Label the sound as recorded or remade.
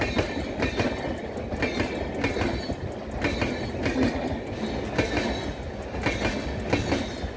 recorded